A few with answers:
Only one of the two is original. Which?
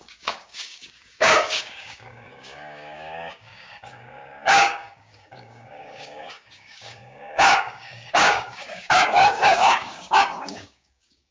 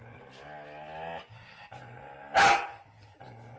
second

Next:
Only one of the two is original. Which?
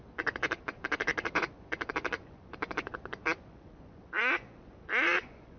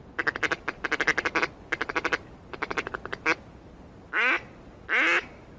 second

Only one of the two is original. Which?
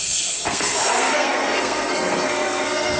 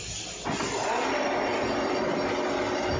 second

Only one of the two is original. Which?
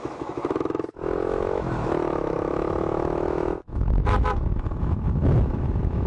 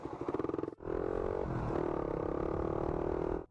second